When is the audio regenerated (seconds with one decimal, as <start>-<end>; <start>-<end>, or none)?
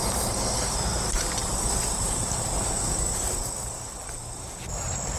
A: 0.0-5.2